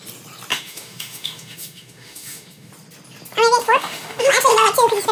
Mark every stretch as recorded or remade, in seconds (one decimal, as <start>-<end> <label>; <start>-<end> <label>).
0.0-0.5 recorded; 0.5-2.7 remade; 2.7-3.6 recorded; 3.6-4.3 remade; 4.3-5.1 recorded